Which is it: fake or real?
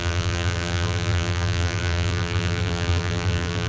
fake